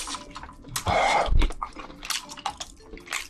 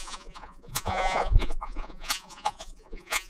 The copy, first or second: second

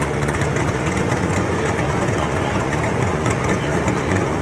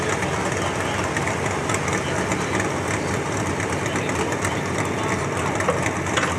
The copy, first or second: first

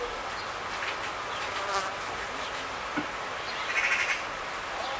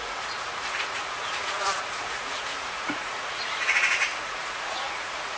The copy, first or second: second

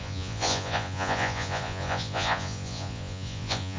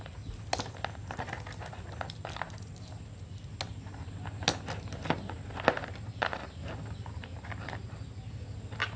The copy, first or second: first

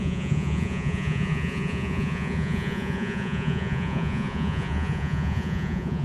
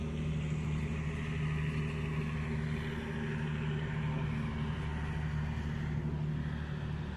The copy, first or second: first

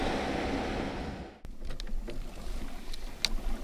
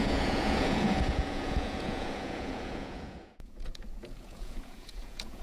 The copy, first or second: second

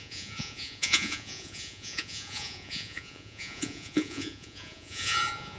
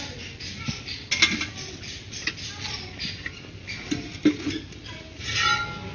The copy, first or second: first